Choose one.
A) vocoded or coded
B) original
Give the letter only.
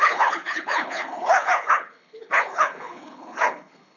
A